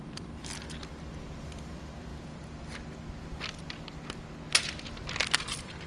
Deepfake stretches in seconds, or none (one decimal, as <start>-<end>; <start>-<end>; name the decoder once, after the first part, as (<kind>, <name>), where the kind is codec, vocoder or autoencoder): 0.0-2.1 (vocoder, BigVGAN v2); 5.4-5.9